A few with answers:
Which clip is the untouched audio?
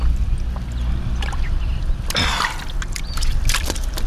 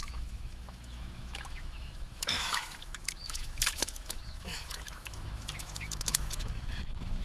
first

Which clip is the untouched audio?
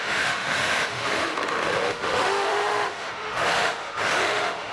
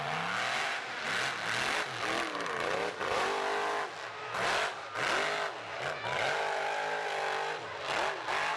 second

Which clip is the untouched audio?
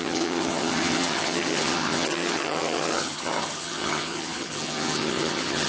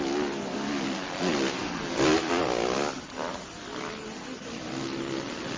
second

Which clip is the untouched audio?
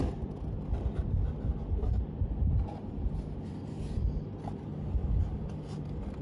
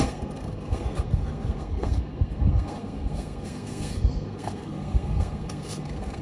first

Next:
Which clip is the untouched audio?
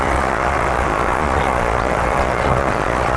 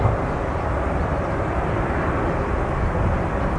second